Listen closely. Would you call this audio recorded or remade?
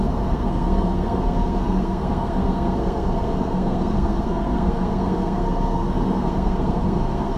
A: remade